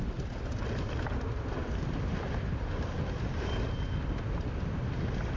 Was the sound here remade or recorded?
recorded